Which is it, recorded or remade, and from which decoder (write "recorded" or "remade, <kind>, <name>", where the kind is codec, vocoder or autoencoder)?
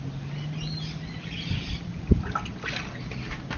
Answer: recorded